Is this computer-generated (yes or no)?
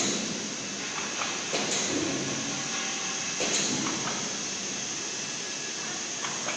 no